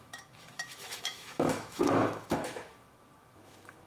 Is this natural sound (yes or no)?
no